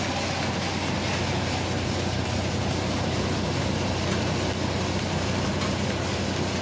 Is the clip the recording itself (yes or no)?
yes